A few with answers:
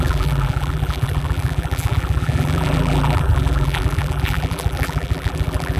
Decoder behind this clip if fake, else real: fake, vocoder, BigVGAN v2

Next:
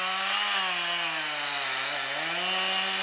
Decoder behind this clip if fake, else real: real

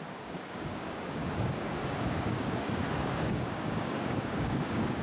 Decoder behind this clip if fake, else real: fake, codec, DAC